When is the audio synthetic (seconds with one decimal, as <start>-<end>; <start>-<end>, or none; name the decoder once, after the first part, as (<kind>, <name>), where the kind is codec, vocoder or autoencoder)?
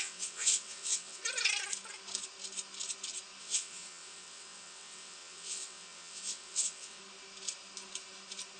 0.0-1.2 (vocoder, WaveNeXt); 3.4-7.0